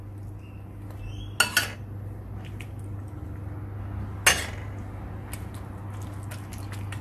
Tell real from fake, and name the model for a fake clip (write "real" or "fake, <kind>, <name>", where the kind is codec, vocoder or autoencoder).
real